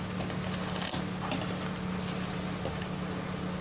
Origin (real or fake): real